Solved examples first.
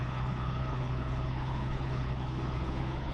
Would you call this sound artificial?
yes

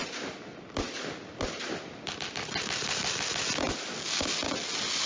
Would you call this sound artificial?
no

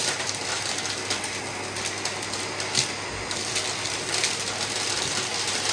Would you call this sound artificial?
no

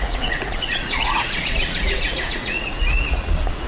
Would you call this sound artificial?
yes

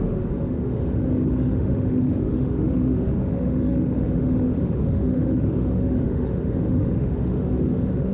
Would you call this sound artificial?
yes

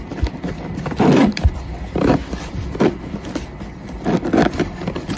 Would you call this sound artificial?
yes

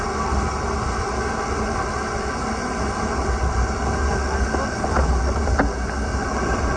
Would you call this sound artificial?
no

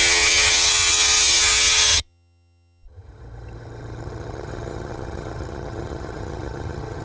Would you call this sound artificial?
yes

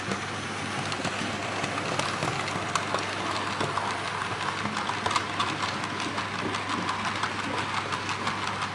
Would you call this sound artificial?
no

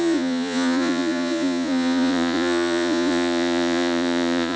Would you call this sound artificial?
yes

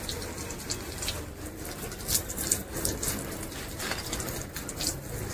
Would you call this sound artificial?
no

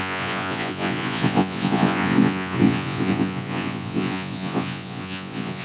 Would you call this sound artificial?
yes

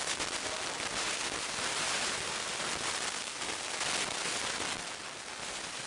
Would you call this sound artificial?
no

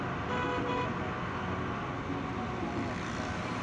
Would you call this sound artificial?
no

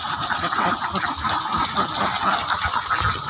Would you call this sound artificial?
no